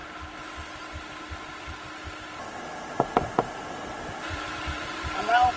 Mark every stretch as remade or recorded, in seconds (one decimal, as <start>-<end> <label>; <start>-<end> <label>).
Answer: 0.0-3.2 recorded; 3.2-5.6 remade